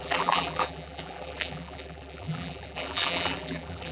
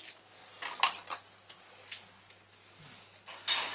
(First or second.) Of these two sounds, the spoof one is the first